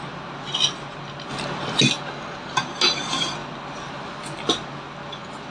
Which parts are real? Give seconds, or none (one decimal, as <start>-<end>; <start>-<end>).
0.0-1.3; 1.8-5.5